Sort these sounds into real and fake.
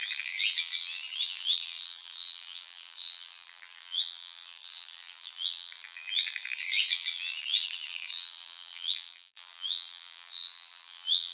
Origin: fake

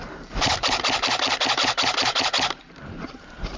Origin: fake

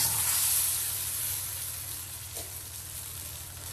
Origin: real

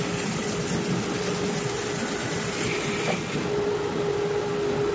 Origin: real